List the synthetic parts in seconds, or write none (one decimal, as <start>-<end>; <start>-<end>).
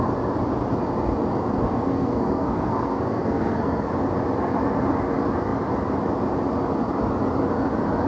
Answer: 1.4-3.9